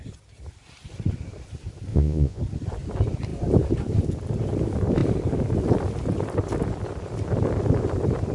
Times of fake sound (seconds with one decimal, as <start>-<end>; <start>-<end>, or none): 1.9-2.4